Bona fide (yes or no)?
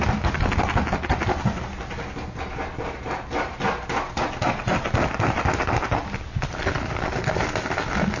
yes